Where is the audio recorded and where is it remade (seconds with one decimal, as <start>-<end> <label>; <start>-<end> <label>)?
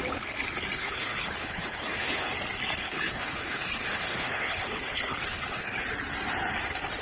0.0-0.8 recorded; 0.8-2.3 remade; 2.3-2.8 recorded; 2.8-5.8 remade; 5.8-7.0 recorded